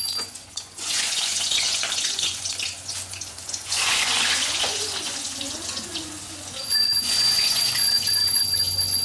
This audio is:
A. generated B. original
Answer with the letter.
A